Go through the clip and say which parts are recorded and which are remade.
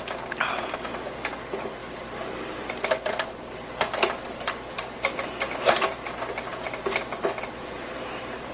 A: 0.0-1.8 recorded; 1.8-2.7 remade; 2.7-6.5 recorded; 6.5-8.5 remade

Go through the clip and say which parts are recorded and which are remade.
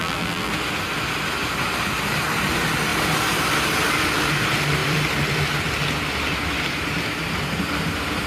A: 0.0-0.5 remade; 0.5-8.3 recorded